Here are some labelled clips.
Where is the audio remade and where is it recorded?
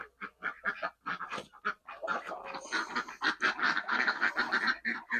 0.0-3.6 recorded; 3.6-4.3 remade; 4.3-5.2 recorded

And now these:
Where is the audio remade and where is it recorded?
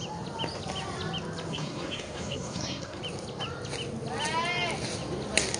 0.0-1.5 recorded; 1.5-3.0 remade; 3.0-5.6 recorded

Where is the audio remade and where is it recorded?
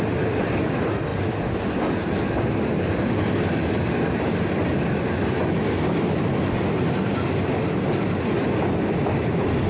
0.0-9.7 recorded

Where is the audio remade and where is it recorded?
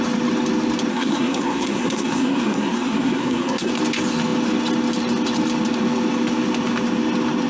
0.0-0.9 recorded; 0.9-3.7 remade; 3.7-7.5 recorded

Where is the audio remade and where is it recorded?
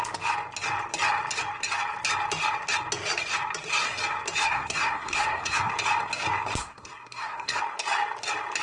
0.0-4.4 recorded; 4.4-5.7 remade; 5.7-6.6 recorded; 6.6-7.6 remade; 7.6-8.6 recorded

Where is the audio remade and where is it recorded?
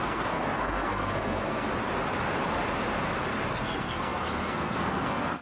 0.0-1.7 remade; 1.7-3.5 recorded; 3.5-5.4 remade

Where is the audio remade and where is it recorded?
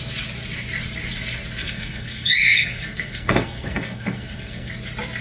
0.0-1.6 recorded; 1.6-4.7 remade; 4.7-5.2 recorded